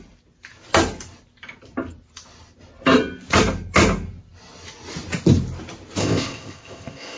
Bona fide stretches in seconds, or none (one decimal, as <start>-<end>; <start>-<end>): 0.0-6.0